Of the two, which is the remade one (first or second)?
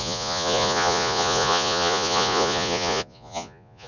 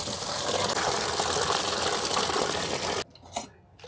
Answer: first